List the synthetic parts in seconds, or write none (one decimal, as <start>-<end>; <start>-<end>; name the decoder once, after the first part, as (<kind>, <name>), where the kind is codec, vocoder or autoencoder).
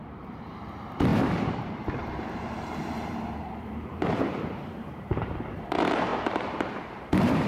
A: 0.0-7.5 (vocoder, BigVGAN v2)